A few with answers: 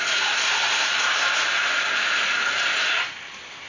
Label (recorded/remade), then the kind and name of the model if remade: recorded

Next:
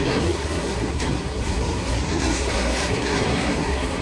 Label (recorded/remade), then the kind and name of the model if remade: remade, codec, SNAC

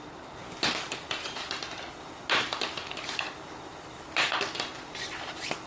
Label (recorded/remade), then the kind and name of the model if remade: recorded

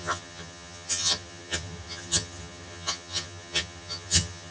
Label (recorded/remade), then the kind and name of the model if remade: remade, vocoder, HiFi-GAN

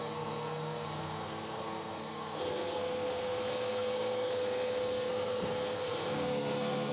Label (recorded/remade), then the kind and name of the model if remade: remade, codec, SNAC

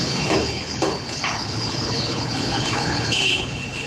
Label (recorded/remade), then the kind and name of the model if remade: remade, codec, HILCodec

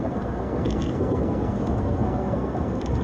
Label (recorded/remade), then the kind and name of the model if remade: remade, codec, SNAC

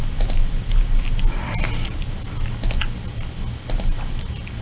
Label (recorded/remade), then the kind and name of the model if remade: recorded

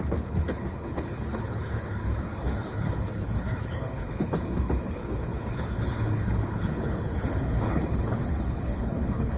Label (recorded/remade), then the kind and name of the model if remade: remade, codec, HILCodec